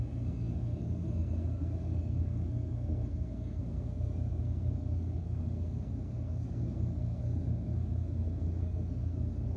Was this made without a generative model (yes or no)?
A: no